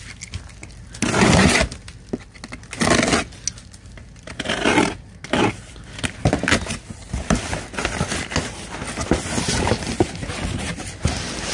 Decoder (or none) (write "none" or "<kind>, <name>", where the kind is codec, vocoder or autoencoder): none